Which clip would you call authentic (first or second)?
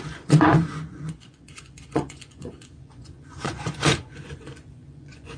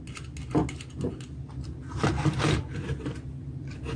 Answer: second